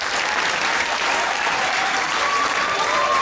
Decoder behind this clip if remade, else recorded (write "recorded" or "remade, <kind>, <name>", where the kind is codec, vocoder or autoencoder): remade, vocoder, BigVGAN v2